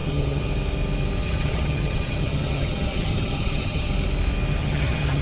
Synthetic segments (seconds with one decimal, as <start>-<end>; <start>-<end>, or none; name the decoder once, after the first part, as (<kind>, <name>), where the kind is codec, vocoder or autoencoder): 0.0-0.5 (vocoder, HiFi-GAN); 1.2-3.9; 4.6-5.2